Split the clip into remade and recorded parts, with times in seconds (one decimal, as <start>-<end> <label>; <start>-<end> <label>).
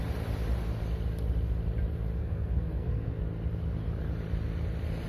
0.0-2.2 recorded; 2.2-3.2 remade; 3.2-5.1 recorded